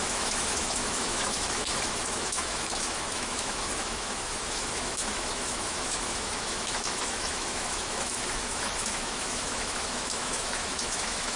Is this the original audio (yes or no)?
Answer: no